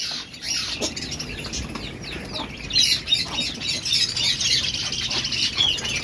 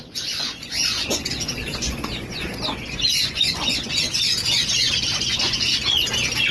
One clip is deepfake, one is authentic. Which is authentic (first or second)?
first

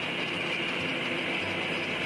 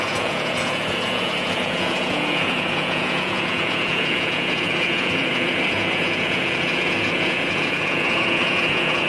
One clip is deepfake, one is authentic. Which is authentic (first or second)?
first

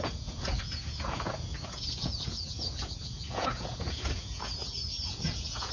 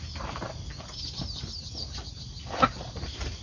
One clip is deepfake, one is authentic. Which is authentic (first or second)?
second